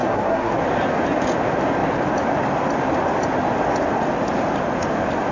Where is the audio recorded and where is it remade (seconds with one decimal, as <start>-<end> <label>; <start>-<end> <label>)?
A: 0.0-0.5 remade; 0.5-5.3 recorded